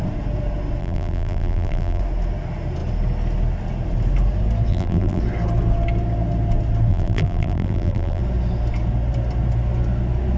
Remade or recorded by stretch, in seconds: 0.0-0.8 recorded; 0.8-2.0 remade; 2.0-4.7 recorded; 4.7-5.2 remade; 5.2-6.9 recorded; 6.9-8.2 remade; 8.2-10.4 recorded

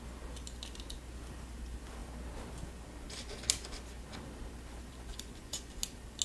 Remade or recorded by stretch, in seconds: 0.0-5.1 recorded; 5.1-5.7 remade; 5.7-6.2 recorded